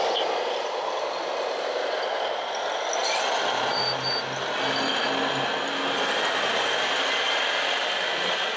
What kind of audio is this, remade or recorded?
recorded